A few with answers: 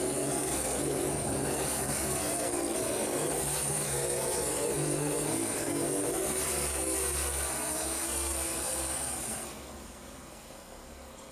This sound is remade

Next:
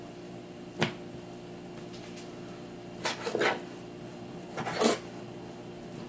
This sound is recorded